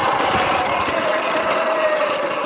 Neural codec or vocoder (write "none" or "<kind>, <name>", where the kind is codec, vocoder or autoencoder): none